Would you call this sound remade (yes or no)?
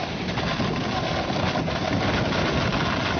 no